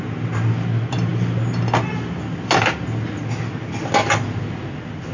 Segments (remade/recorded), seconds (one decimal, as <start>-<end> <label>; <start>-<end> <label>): 0.0-5.1 recorded